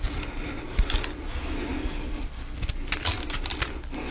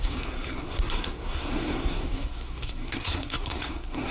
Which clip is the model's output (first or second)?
second